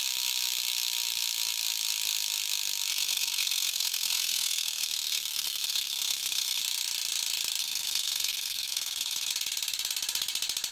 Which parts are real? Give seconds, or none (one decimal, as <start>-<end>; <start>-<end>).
0.0-2.9; 6.6-7.6; 9.3-10.7